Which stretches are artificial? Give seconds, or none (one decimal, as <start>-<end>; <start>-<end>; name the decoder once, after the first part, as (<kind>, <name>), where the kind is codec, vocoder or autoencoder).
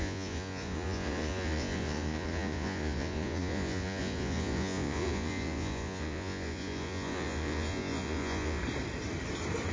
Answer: 0.0-8.6 (vocoder, Vocos)